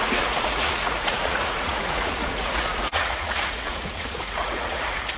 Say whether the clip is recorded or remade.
remade